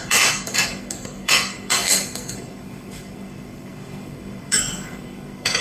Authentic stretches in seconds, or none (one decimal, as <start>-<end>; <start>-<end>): none